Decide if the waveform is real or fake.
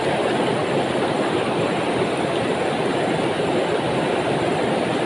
real